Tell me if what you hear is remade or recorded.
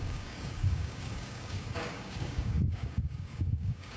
remade